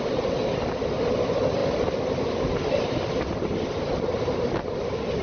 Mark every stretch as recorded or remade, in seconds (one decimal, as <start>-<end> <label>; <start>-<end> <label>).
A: 0.0-5.2 recorded